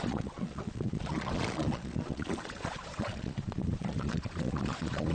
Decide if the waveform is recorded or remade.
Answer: remade